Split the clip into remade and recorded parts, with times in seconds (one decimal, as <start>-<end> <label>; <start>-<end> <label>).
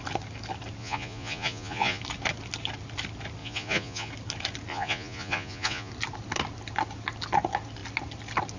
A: 0.0-0.8 recorded; 0.8-2.0 remade; 2.0-3.4 recorded; 3.4-4.1 remade; 4.1-4.7 recorded; 4.7-5.9 remade; 5.9-8.6 recorded